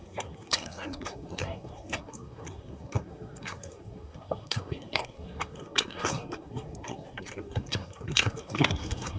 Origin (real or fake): fake